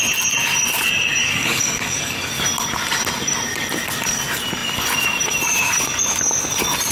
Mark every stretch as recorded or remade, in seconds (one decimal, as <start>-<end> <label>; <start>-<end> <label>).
0.0-1.2 recorded; 1.2-2.3 remade; 2.3-6.9 recorded

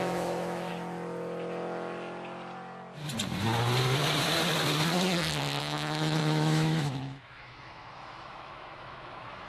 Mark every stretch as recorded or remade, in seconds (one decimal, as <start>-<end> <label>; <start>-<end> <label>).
0.0-0.7 remade; 0.7-5.6 recorded; 5.6-9.5 remade

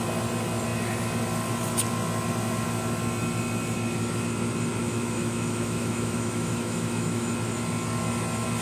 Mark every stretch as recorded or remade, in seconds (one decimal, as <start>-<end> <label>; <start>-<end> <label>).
0.0-4.8 recorded; 4.8-7.3 remade; 7.3-8.6 recorded

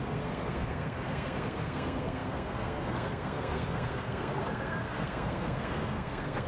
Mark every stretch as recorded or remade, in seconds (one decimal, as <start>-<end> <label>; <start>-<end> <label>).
0.0-6.5 remade

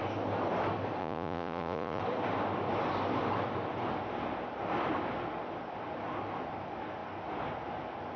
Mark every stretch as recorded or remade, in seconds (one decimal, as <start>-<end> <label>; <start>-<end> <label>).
0.0-1.0 recorded; 1.0-2.0 remade; 2.0-8.2 recorded

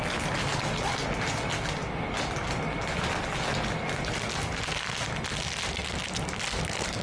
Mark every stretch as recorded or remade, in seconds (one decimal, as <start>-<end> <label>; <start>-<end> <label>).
0.0-7.0 recorded

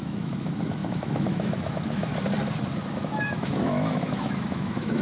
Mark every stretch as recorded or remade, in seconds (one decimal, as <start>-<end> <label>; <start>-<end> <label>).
0.0-2.1 remade; 2.1-2.8 recorded; 2.8-5.0 remade

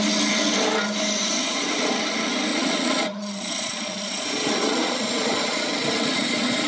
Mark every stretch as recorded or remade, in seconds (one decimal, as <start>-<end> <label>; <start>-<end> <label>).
0.0-1.4 recorded; 1.4-1.9 remade; 1.9-2.5 recorded; 2.5-6.7 remade